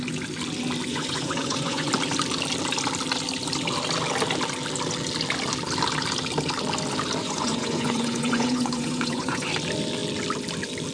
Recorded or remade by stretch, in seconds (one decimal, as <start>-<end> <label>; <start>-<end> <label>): 0.0-0.9 recorded; 0.9-1.9 remade; 1.9-7.2 recorded; 7.2-9.5 remade; 9.5-10.9 recorded